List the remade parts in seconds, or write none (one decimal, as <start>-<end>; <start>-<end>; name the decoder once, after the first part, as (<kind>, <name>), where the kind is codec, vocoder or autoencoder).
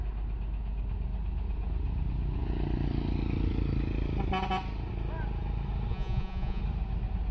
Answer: 5.9-6.6 (vocoder, Vocos)